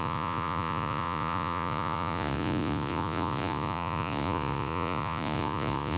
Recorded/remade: remade